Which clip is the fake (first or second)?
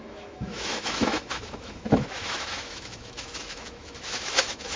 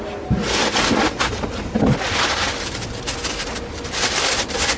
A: first